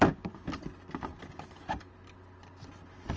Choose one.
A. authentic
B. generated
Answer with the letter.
A